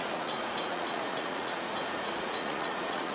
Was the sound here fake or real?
fake